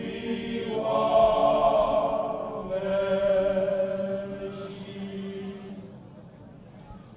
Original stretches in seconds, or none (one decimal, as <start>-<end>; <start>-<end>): 0.0-7.2